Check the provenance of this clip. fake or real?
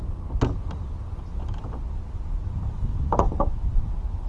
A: real